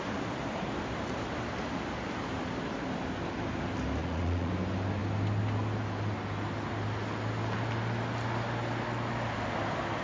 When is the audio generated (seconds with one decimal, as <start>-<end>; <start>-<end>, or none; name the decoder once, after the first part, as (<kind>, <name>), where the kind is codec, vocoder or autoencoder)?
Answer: 4.0-4.5 (vocoder, Vocos)